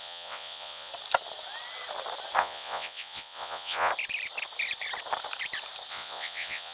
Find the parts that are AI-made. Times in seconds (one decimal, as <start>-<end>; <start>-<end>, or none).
0.0-0.9; 2.4-3.9; 5.9-6.7